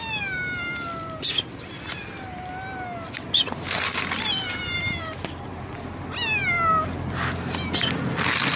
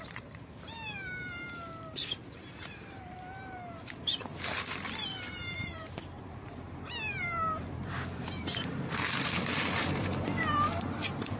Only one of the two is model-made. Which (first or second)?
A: second